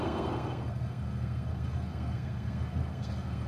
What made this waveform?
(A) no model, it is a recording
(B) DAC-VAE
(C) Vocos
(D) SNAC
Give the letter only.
D